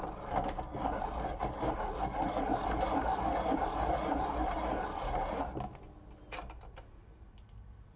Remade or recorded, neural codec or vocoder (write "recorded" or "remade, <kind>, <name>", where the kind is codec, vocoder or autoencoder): recorded